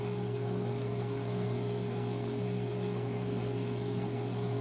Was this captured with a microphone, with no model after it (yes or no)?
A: no